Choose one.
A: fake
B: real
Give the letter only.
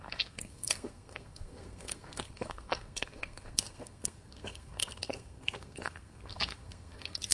A